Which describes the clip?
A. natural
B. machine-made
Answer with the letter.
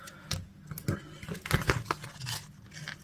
A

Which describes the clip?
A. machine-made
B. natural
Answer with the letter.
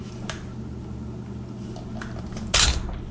B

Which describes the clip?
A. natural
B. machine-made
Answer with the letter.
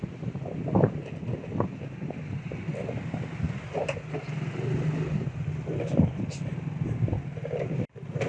A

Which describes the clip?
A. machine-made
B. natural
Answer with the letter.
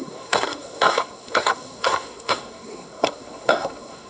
A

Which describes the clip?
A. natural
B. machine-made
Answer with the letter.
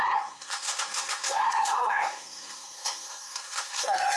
B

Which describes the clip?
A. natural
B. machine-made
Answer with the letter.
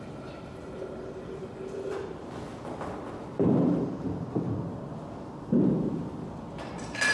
A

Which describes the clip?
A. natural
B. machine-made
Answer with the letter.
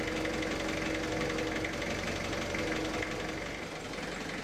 A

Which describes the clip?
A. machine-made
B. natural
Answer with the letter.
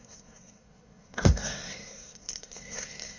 A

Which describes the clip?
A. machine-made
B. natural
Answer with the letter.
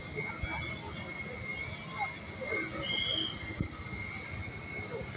B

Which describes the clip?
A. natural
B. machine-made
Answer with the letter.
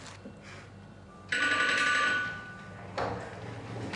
A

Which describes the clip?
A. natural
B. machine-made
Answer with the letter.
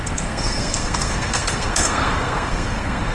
B